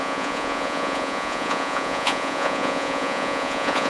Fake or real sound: fake